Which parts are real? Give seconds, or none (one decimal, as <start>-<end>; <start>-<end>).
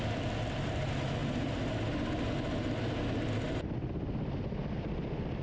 1.2-4.4